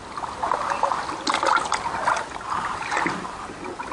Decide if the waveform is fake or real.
real